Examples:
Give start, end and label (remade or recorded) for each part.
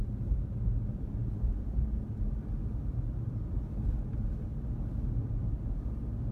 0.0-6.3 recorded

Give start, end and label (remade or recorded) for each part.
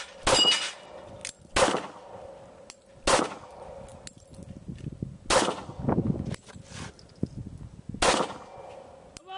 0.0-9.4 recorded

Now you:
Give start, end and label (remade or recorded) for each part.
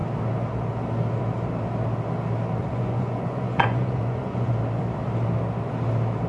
0.0-2.6 recorded; 2.6-4.5 remade; 4.5-6.3 recorded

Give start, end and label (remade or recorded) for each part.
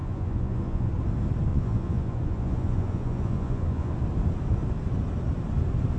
0.0-0.9 remade; 0.9-1.5 recorded; 1.5-3.9 remade; 3.9-6.0 recorded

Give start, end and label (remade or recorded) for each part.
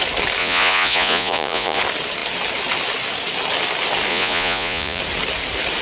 0.0-0.4 recorded; 0.4-1.8 remade; 1.8-4.1 recorded; 4.1-5.0 remade; 5.0-5.8 recorded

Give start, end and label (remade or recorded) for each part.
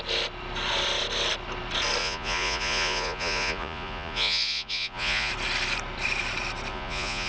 0.0-2.0 recorded; 2.0-5.3 remade; 5.3-6.7 recorded; 6.7-7.3 remade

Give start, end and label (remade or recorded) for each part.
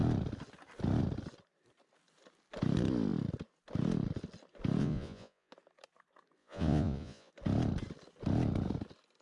0.0-4.8 recorded; 4.8-5.5 remade; 5.5-6.4 recorded; 6.4-7.3 remade; 7.3-9.2 recorded